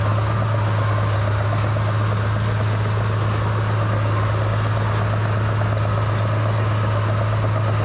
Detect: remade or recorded recorded